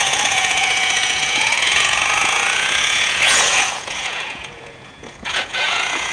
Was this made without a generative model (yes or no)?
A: no